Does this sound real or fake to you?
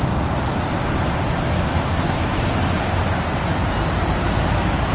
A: real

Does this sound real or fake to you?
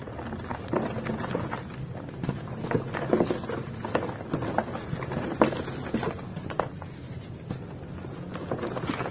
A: real